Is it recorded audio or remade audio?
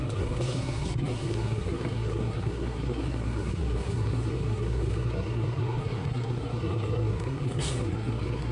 remade